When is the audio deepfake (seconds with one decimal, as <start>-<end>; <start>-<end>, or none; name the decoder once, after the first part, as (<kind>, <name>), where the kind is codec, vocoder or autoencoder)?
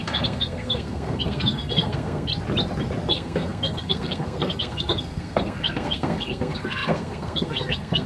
0.0-2.3 (codec, SNAC); 3.1-8.1